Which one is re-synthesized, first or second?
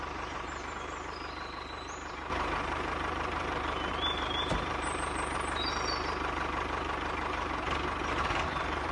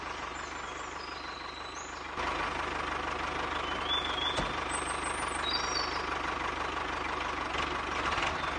first